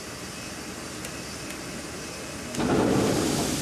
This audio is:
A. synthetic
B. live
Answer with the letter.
B